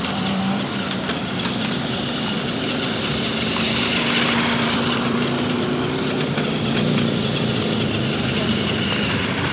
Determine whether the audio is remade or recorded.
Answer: remade